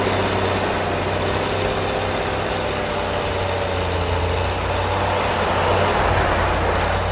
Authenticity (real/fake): real